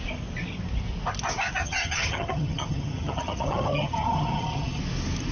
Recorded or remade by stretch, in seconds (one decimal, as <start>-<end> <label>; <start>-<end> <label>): 0.0-1.6 recorded; 1.6-4.8 remade; 4.8-5.3 recorded